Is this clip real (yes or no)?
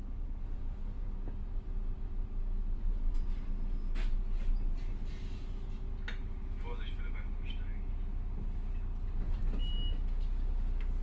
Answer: yes